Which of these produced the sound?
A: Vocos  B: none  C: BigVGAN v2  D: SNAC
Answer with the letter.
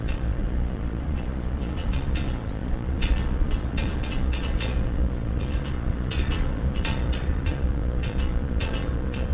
A